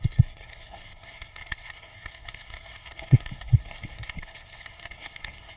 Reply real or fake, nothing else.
fake